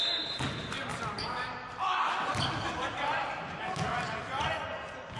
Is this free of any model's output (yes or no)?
yes